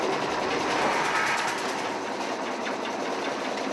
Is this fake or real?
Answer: real